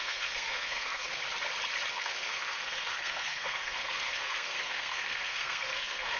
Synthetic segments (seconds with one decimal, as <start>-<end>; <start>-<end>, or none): 0.0-1.2; 1.9-6.2